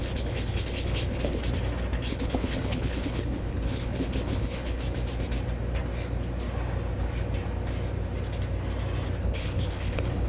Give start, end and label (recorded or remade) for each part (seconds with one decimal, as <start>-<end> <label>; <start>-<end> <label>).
0.0-1.4 remade; 1.4-2.1 recorded; 2.1-4.8 remade; 4.8-9.2 recorded; 9.2-10.3 remade